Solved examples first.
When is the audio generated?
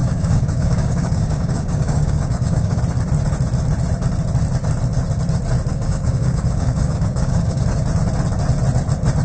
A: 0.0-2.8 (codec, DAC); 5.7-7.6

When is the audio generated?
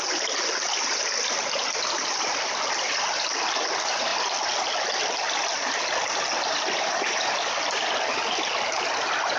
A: none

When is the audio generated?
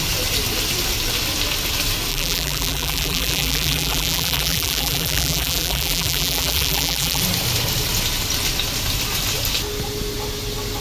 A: 2.1-7.2 (vocoder, BigVGAN v2)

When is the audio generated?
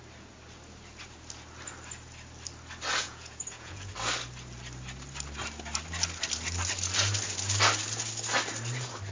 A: 3.0-3.9 (vocoder, Vocos)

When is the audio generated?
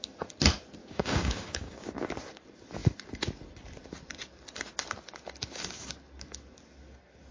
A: 0.8-1.9 (codec, DAC)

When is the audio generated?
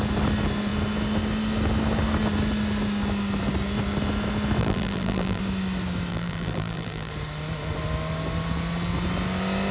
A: 4.6-5.4 (vocoder, BigVGAN v2); 6.1-7.1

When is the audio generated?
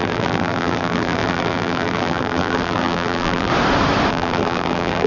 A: 0.0-3.5 (vocoder, BigVGAN v2); 4.1-5.1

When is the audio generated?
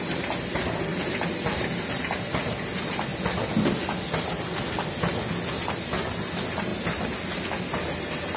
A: 0.9-2.3 (vocoder, BigVGAN v2)